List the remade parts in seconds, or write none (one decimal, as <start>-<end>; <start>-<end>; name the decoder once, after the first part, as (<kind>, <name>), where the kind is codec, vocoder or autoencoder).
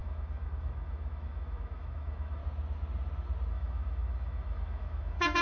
0.0-2.4 (autoencoder, DAC-VAE); 3.5-5.4